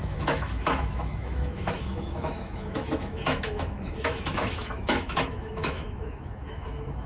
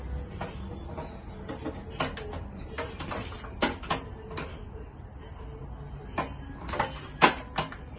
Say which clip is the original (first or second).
second